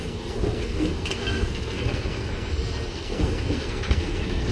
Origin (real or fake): fake